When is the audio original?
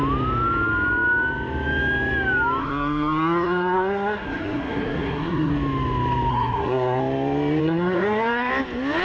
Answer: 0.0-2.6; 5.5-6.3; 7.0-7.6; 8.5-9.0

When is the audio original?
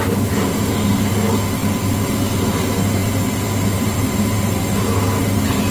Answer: 0.0-5.7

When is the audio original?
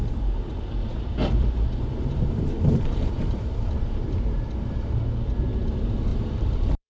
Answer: 0.0-0.8; 4.9-6.1